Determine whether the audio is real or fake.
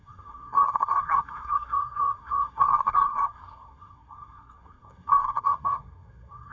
fake